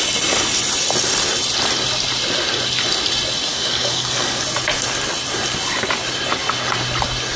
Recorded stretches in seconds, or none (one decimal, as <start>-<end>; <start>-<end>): 0.0-3.5; 4.4-7.4